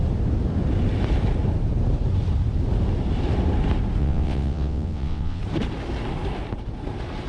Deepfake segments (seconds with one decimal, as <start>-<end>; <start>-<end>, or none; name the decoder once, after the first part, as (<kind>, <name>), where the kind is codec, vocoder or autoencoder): 4.0-5.4 (vocoder, WaveNeXt)